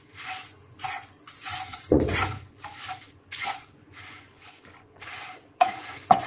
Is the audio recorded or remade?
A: remade